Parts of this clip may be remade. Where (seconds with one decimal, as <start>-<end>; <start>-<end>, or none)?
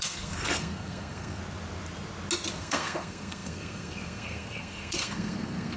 0.0-1.4; 2.6-5.8